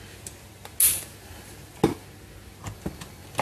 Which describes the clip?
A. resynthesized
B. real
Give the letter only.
B